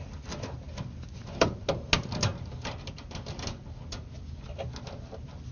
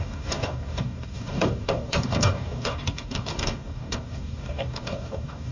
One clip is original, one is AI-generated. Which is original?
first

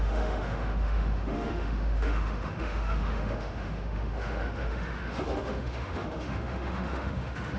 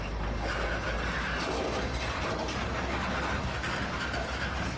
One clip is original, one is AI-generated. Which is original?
second